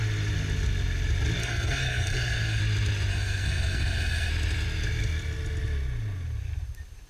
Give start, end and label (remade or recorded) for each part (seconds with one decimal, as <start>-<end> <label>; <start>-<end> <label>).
0.0-1.4 recorded; 1.4-2.6 remade; 2.6-3.1 recorded; 3.1-4.3 remade; 4.3-7.1 recorded